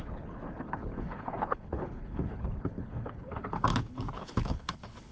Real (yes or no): no